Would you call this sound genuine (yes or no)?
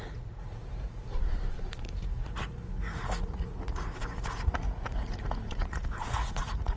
no